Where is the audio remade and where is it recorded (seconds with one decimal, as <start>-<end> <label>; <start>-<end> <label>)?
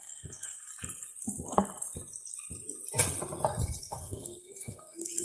0.0-0.7 remade; 0.7-3.8 recorded; 3.8-5.2 remade